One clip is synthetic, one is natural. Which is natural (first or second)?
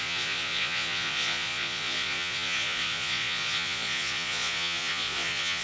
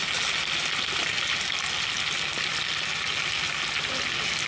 second